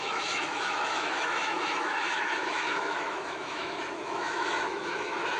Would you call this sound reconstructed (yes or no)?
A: yes